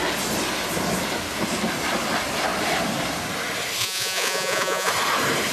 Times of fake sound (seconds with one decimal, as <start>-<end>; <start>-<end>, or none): 3.8-4.9